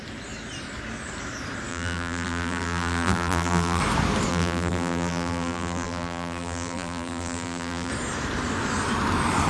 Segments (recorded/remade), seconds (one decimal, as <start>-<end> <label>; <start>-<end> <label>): 0.0-1.7 recorded; 1.7-3.8 remade; 3.8-4.3 recorded; 4.3-7.9 remade; 7.9-9.5 recorded